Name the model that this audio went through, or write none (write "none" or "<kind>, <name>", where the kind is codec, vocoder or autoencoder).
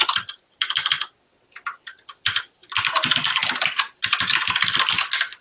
vocoder, BigVGAN v2